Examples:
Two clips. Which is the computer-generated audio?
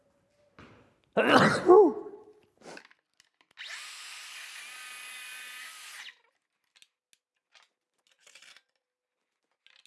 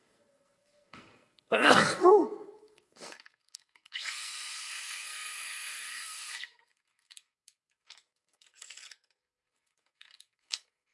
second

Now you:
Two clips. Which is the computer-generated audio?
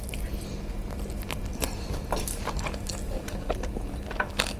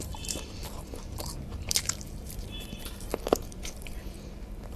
second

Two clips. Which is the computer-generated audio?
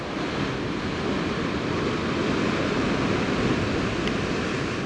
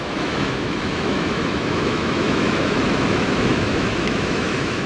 second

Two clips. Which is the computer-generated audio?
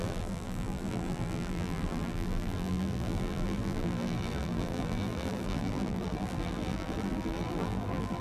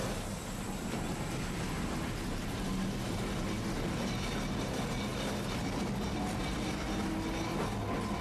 first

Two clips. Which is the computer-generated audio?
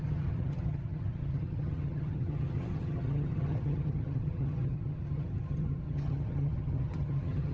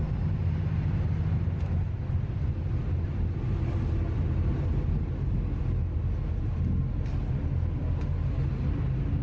first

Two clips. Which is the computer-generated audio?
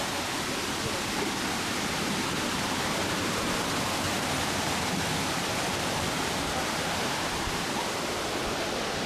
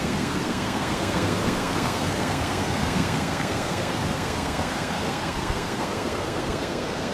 second